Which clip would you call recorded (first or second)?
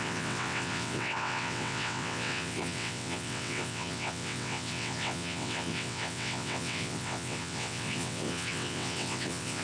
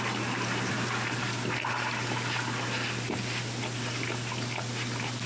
second